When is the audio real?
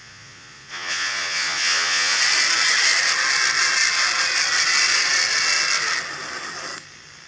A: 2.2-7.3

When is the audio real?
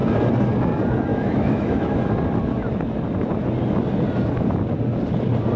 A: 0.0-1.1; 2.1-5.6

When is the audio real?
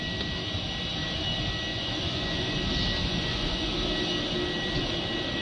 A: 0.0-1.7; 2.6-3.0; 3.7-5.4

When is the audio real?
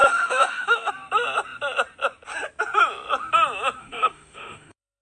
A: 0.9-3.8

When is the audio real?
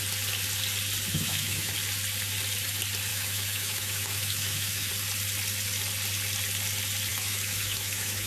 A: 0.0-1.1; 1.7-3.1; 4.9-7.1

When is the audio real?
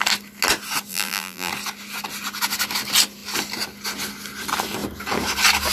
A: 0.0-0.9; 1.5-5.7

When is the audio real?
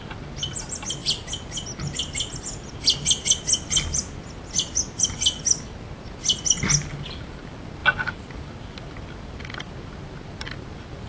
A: 0.0-11.1